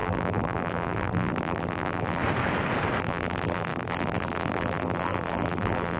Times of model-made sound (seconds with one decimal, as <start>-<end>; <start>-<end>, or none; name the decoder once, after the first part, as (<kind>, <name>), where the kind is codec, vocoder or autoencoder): 0.0-2.2 (vocoder, BigVGAN v2); 3.0-6.0